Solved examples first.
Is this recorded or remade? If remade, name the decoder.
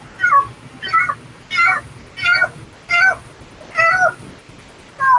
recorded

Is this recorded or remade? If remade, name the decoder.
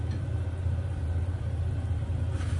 remade, vocoder, BigVGAN v2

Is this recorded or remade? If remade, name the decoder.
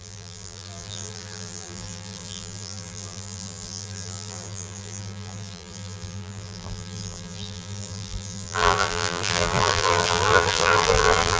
remade, vocoder, BigVGAN v2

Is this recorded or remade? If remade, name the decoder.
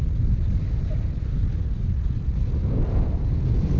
recorded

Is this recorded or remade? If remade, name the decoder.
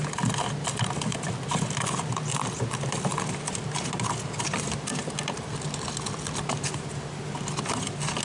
recorded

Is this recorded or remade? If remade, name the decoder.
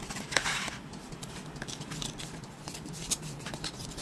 remade, vocoder, BigVGAN v2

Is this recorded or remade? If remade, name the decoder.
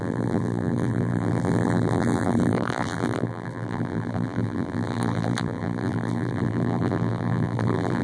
remade, vocoder, BigVGAN v2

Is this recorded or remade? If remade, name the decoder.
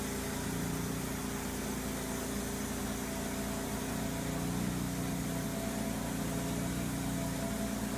recorded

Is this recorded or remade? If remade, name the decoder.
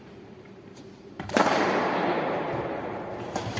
remade, vocoder, BigVGAN v2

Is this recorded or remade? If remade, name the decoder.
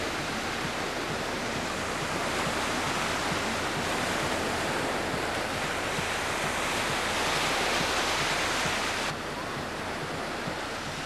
recorded